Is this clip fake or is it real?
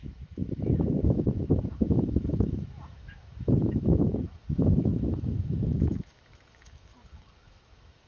fake